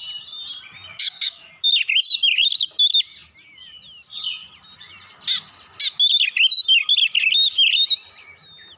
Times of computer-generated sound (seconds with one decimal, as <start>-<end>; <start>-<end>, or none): 0.9-1.7